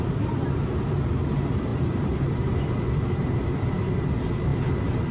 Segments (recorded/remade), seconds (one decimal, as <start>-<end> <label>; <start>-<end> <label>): 0.0-5.1 recorded